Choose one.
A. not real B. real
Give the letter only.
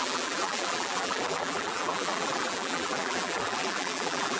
A